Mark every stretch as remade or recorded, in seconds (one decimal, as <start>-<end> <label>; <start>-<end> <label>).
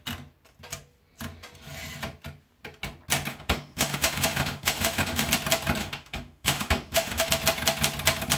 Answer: 0.0-3.3 recorded; 3.3-5.3 remade; 5.3-5.8 recorded; 5.8-7.3 remade; 7.3-8.4 recorded